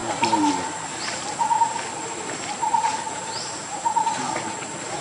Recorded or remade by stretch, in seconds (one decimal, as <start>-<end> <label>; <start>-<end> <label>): 0.0-0.9 recorded; 0.9-1.9 remade; 1.9-5.0 recorded